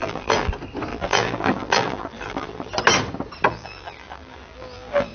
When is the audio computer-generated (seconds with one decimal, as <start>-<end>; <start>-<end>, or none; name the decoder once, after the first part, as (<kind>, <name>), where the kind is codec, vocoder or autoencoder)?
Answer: 0.0-0.5 (vocoder, BigVGAN v2); 0.9-2.7; 3.5-5.1